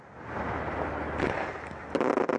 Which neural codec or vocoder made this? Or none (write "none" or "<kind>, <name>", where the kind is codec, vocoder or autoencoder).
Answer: none